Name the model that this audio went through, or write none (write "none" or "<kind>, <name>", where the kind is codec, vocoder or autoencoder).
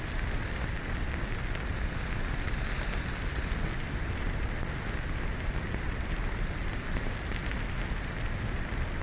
none